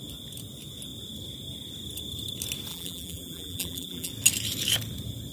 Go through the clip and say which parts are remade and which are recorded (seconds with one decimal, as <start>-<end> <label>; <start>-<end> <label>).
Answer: 0.0-2.7 recorded; 2.7-4.1 remade; 4.1-5.3 recorded